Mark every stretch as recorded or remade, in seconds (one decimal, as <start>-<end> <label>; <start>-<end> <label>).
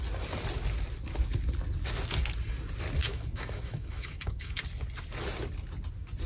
0.0-3.0 recorded; 3.0-4.6 remade; 4.6-6.3 recorded